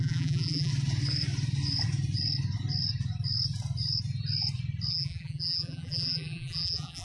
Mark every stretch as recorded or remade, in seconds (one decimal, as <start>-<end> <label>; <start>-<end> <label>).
0.0-0.7 remade; 0.7-4.9 recorded; 4.9-7.0 remade